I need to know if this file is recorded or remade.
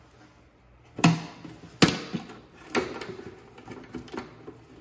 recorded